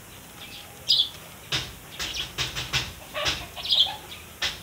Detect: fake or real real